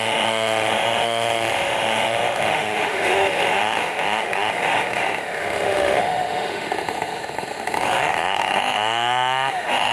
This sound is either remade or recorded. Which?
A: remade